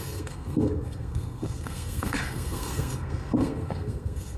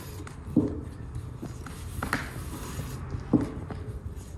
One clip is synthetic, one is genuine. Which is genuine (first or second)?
second